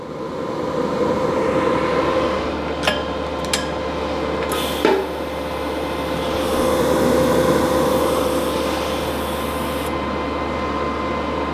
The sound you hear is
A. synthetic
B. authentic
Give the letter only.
B